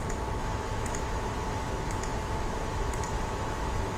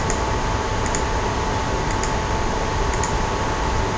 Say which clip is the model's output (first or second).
first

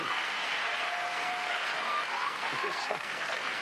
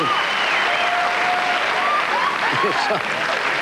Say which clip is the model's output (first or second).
first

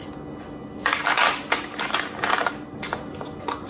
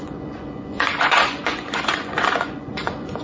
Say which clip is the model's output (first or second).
second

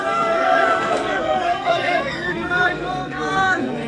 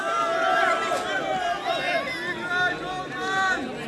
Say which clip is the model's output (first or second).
first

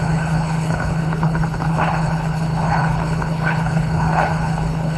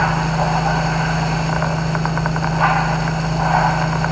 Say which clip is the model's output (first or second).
first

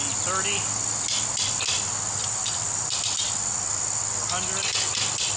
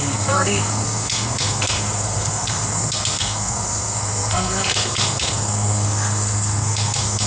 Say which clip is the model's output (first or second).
second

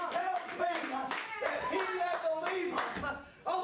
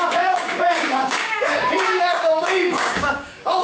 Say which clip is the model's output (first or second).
second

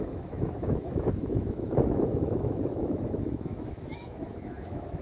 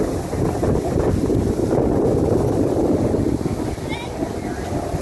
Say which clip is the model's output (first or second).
first